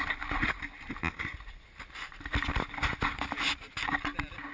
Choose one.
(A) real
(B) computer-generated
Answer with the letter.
A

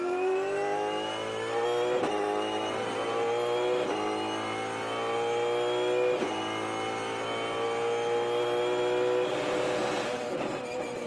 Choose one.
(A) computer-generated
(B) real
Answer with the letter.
B